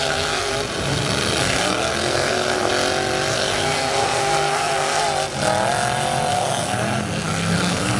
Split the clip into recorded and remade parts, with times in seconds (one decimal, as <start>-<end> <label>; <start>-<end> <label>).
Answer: 0.0-0.5 remade; 0.5-1.4 recorded; 1.4-2.7 remade; 2.7-3.3 recorded; 3.3-5.0 remade; 5.0-6.3 recorded; 6.3-8.0 remade